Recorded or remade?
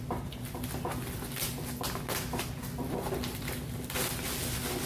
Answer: recorded